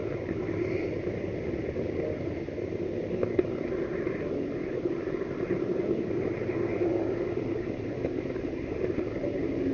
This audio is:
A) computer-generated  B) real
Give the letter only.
B